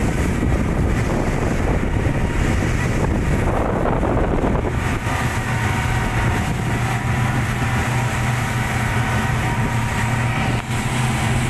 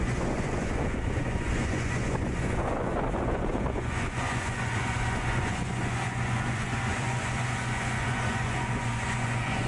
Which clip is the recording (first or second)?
first